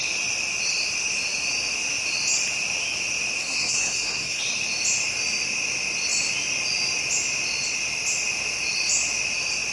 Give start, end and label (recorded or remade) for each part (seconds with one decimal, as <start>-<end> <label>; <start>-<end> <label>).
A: 0.0-3.4 recorded; 3.4-4.4 remade; 4.4-9.7 recorded